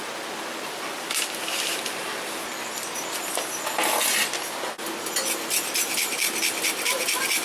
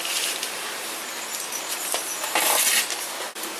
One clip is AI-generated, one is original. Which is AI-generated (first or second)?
second